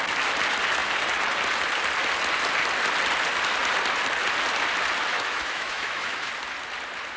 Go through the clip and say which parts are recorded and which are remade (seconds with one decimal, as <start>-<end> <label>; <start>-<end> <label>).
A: 0.0-5.1 recorded; 5.1-6.3 remade; 6.3-7.2 recorded

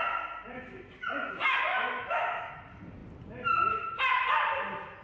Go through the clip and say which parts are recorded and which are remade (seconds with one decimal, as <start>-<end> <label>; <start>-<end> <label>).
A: 0.0-1.7 recorded; 1.7-2.5 remade; 2.5-5.0 recorded